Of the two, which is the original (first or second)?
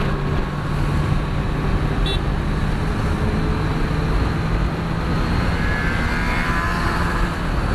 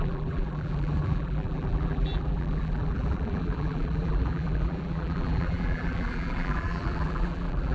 first